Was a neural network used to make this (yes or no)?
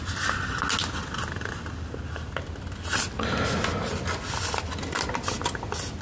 no